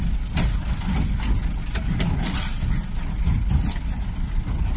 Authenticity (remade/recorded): recorded